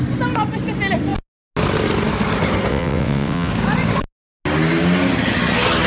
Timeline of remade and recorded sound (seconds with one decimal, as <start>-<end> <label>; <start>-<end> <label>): 0.0-2.7 recorded; 2.7-3.5 remade; 3.5-5.9 recorded